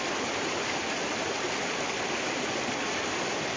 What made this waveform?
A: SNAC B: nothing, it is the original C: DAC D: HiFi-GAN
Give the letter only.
B